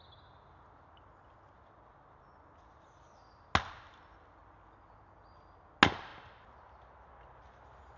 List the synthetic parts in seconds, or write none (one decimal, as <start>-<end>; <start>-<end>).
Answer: none